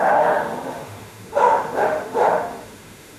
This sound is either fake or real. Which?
fake